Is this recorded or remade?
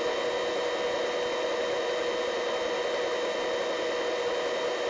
recorded